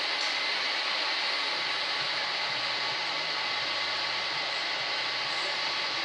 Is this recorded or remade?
recorded